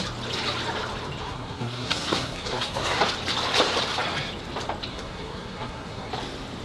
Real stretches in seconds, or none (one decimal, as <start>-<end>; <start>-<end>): 0.0-1.2; 3.0-4.9; 6.1-6.6